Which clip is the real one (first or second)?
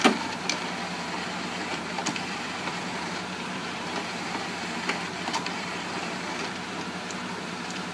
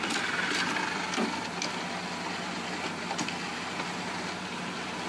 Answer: second